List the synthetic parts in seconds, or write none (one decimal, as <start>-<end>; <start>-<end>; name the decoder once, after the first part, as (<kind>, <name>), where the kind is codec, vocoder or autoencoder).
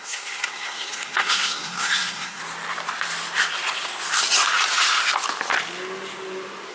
0.0-2.4 (codec, SNAC)